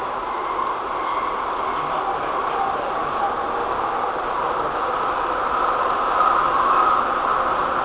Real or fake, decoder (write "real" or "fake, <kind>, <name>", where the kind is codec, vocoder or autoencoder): real